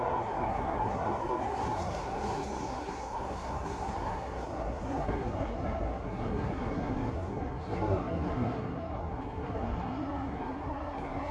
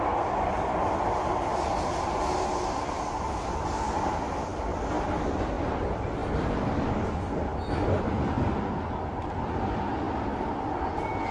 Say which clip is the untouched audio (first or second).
second